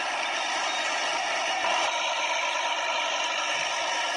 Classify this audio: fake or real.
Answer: real